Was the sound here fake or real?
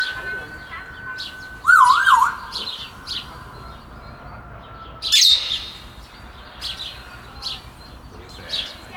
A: real